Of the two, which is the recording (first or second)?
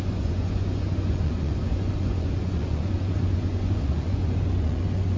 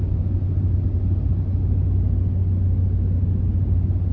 second